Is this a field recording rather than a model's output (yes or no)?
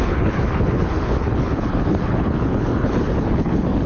no